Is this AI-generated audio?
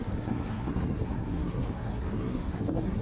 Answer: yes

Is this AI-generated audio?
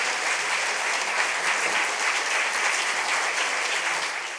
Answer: no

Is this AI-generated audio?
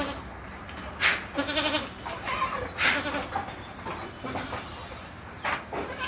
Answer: no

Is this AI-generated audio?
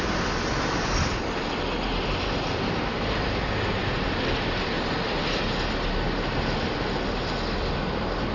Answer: no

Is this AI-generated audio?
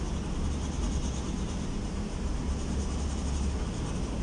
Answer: no